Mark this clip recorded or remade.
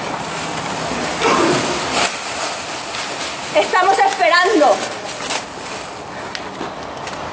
recorded